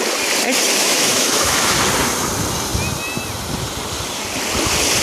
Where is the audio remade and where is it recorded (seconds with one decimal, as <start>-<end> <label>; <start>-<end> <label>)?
0.0-0.8 recorded; 0.8-1.8 remade; 1.8-5.0 recorded